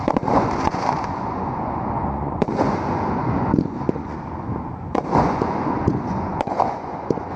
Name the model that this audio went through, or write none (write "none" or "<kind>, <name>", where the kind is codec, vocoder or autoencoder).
vocoder, Vocos